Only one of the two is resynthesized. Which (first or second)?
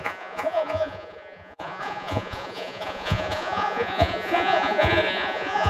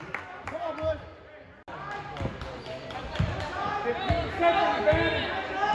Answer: first